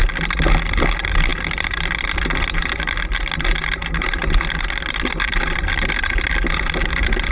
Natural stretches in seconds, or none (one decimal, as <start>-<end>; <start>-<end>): 0.0-7.3